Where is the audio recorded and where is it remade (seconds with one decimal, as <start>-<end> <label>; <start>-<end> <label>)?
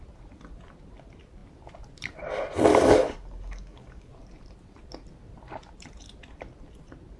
0.0-2.7 recorded; 2.7-4.1 remade; 4.1-7.2 recorded